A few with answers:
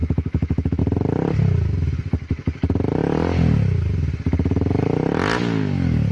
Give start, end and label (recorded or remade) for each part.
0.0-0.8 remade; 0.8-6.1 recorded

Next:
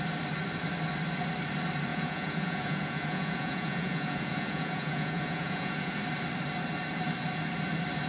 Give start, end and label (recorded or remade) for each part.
0.0-1.9 recorded; 1.9-6.0 remade; 6.0-8.1 recorded

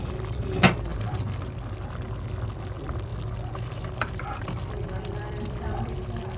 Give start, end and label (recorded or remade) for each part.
0.0-0.9 recorded; 0.9-1.5 remade; 1.5-3.1 recorded; 3.1-6.4 remade

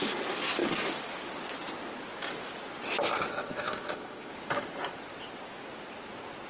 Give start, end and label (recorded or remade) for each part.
0.0-3.3 recorded; 3.3-4.3 remade; 4.3-6.5 recorded

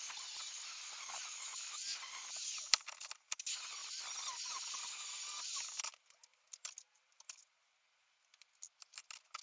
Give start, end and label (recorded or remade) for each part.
0.0-9.4 recorded

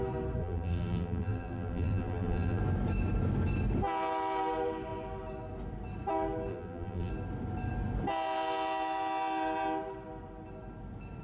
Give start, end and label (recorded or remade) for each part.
0.0-0.4 recorded; 0.4-2.6 remade; 2.6-6.5 recorded; 6.5-7.1 remade; 7.1-11.2 recorded

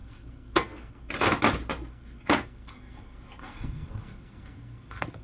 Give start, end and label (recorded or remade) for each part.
0.0-1.1 remade; 1.1-1.8 recorded; 1.8-5.2 remade

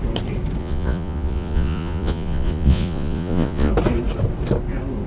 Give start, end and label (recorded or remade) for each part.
0.0-0.6 recorded; 0.6-3.7 remade; 3.7-5.1 recorded